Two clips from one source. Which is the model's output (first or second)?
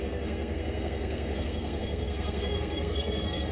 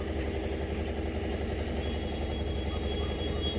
first